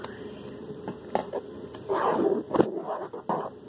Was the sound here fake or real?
real